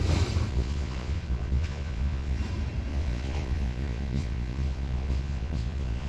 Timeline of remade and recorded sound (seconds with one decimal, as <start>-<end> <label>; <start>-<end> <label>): 0.0-0.5 recorded; 0.5-2.4 remade; 2.4-2.9 recorded; 2.9-6.1 remade